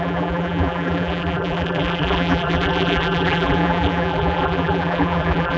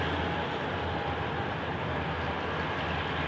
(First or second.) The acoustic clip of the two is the second